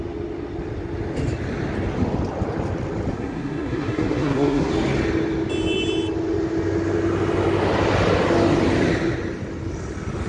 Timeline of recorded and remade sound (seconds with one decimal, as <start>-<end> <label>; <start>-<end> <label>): 0.0-3.1 recorded; 3.1-4.7 remade; 4.7-10.3 recorded